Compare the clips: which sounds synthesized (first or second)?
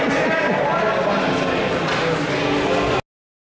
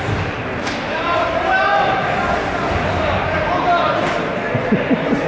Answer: second